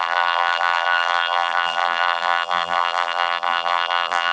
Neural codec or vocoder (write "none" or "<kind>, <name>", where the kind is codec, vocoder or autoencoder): vocoder, BigVGAN v2